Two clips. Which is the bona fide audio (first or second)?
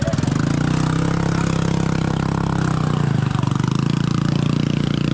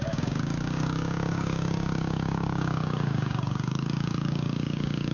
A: first